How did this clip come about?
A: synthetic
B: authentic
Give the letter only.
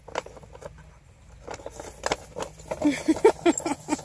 B